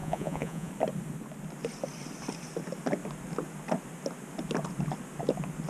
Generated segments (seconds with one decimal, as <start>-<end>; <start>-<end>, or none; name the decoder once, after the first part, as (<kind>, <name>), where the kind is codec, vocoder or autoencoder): 0.0-0.7 (vocoder, Vocos)

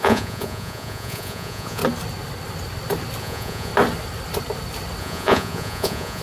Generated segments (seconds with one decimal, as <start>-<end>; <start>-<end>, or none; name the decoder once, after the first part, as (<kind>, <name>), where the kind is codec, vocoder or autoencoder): 0.0-1.8 (vocoder, Vocos); 3.2-3.7; 5.0-6.2

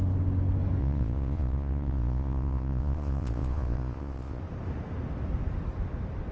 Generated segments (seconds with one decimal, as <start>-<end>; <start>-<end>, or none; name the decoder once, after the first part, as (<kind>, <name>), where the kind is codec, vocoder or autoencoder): 0.8-4.4 (vocoder, Vocos)

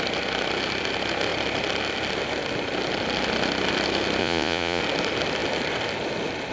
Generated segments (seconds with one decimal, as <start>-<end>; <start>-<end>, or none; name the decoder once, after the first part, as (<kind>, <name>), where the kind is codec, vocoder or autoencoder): 4.2-4.8 (vocoder, Vocos)

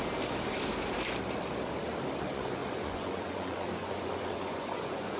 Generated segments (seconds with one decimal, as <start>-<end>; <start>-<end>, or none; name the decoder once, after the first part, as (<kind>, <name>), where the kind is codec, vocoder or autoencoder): 2.2-5.2 (vocoder, Vocos)

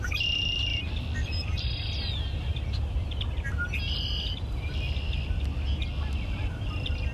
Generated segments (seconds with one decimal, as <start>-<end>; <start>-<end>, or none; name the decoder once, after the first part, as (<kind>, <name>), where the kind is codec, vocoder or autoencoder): none